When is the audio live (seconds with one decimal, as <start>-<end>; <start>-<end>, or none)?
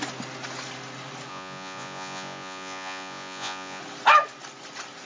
0.0-1.3; 3.8-5.1